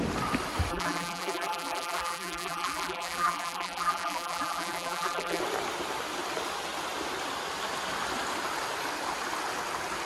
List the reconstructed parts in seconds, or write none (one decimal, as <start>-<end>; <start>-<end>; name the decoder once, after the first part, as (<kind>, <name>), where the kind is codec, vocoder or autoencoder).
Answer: 0.7-5.4 (vocoder, BigVGAN v2)

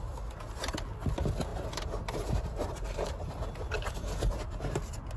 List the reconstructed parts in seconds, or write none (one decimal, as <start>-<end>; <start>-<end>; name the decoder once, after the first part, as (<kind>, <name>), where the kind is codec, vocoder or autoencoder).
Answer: 1.5-3.2 (vocoder, BigVGAN v2)